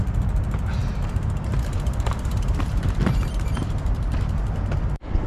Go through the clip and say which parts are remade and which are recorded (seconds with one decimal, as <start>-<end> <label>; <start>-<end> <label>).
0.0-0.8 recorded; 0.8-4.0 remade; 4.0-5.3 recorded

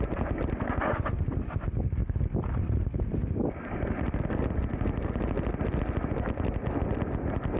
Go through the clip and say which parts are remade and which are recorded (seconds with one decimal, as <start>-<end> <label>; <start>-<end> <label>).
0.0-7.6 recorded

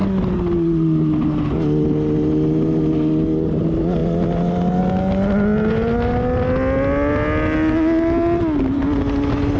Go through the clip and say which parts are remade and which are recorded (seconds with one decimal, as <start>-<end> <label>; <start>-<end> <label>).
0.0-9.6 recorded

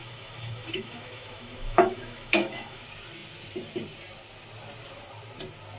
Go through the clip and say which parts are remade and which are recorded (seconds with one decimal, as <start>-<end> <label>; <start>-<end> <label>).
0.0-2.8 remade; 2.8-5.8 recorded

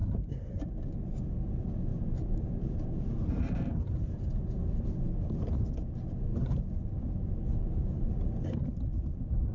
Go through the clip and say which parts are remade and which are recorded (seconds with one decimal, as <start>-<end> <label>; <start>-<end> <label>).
0.0-0.7 remade; 0.7-1.9 recorded; 1.9-3.4 remade; 3.4-6.3 recorded; 6.3-8.7 remade; 8.7-9.5 recorded

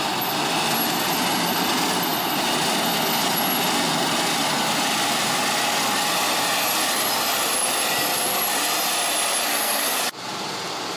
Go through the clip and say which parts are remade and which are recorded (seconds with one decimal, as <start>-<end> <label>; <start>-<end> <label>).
0.0-9.5 recorded; 9.5-10.0 remade; 10.0-11.0 recorded

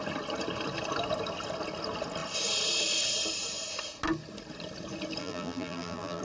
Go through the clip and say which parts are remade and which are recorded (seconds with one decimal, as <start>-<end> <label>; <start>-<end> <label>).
0.0-5.2 recorded; 5.2-6.2 remade

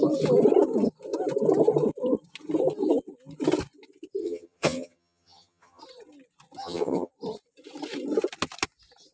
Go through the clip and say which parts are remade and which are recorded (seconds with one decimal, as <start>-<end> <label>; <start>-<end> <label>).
0.0-4.2 recorded; 4.2-5.8 remade; 5.8-6.6 recorded; 6.6-7.1 remade; 7.1-9.1 recorded